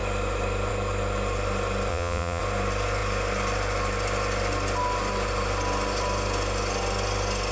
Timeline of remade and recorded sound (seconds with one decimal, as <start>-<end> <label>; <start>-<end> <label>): 0.0-1.9 recorded; 1.9-2.4 remade; 2.4-7.5 recorded